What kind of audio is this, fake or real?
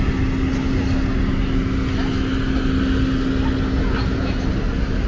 real